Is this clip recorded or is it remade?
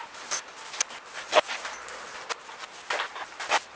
recorded